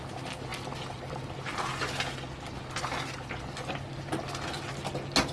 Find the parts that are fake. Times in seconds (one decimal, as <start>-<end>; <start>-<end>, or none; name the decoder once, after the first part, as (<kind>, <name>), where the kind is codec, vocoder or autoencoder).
none